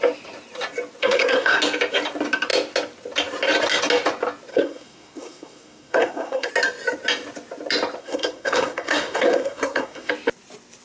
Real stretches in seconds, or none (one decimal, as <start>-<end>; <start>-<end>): 0.0-1.0; 1.6-4.5; 6.5-8.0; 10.1-10.8

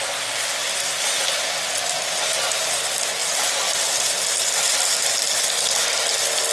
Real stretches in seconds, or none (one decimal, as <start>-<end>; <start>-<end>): 0.0-3.2; 6.0-6.5

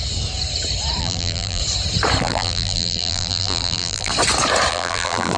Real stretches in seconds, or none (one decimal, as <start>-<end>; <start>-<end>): 0.0-1.0; 1.6-2.2; 4.1-4.7

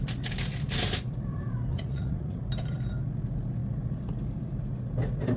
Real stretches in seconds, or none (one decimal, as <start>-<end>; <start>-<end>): 0.0-1.7; 2.4-5.4

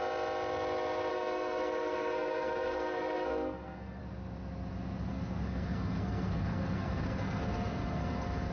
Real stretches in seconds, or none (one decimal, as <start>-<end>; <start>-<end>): 0.0-1.1; 4.0-5.1

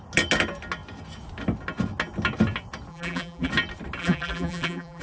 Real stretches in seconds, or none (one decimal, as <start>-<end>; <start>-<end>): 0.0-2.9; 3.5-4.0